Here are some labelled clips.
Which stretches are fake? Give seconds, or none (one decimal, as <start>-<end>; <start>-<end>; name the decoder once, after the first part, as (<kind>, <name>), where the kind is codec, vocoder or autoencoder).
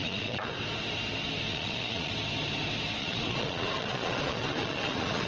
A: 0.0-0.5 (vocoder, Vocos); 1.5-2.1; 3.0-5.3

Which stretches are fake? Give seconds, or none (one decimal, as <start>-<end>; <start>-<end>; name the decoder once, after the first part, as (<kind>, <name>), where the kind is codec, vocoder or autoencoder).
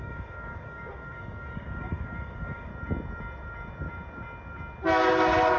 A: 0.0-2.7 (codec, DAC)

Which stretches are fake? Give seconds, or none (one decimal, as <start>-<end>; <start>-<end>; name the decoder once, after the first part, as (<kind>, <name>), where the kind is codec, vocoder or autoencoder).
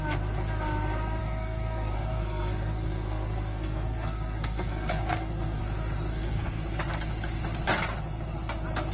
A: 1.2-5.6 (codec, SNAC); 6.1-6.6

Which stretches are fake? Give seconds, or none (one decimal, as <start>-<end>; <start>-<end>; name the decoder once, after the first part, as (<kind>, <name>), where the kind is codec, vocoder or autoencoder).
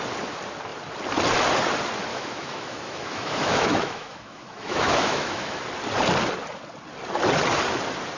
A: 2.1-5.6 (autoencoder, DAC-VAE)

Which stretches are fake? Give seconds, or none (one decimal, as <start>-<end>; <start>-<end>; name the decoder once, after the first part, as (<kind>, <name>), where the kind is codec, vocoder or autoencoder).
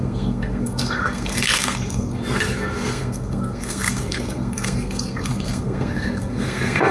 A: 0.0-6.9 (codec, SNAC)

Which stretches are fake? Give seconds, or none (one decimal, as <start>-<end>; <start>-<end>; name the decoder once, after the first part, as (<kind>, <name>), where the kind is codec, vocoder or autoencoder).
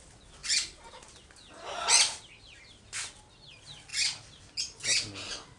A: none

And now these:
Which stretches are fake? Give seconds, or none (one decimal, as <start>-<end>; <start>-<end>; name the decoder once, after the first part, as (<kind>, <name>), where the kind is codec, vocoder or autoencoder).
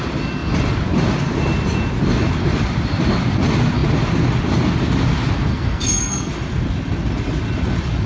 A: 5.5-6.3 (codec, SNAC)